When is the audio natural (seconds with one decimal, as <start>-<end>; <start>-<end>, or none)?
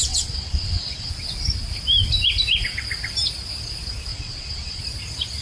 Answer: 1.1-4.1; 4.8-5.4